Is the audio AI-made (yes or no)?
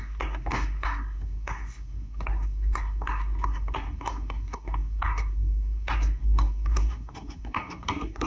yes